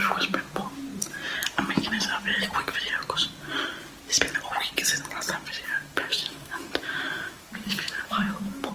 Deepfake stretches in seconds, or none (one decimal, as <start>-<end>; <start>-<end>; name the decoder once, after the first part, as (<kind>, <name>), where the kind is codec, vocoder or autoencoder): 5.7-8.7 (autoencoder, DAC-VAE)